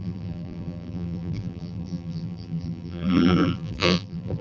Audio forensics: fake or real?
fake